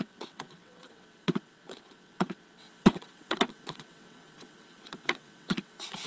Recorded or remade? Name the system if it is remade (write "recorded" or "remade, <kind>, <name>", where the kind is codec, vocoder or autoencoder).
remade, vocoder, WaveNeXt